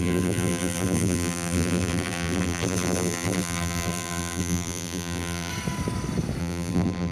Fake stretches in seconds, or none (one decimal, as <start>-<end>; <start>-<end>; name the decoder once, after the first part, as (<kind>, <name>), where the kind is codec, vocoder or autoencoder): 0.0-5.5 (vocoder, BigVGAN v2); 6.4-7.1